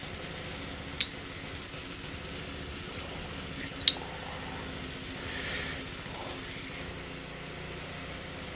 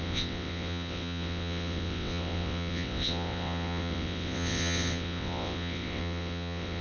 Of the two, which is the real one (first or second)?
first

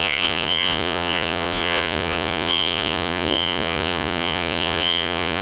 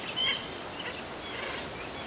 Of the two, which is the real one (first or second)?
second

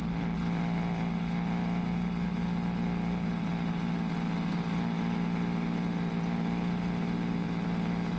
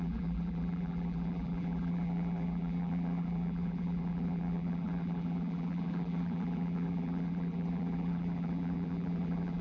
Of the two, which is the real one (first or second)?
first